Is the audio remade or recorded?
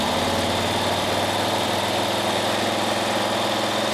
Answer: recorded